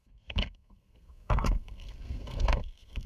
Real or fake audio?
fake